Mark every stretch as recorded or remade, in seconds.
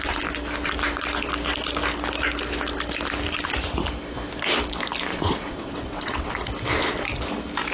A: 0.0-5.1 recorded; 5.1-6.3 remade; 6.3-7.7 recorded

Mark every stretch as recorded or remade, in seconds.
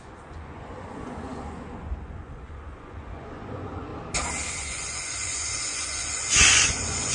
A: 0.0-3.9 remade; 3.9-4.5 recorded; 4.5-7.1 remade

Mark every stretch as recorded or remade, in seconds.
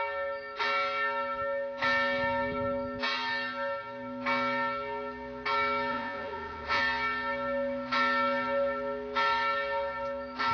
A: 0.0-5.9 recorded; 5.9-6.8 remade; 6.8-10.5 recorded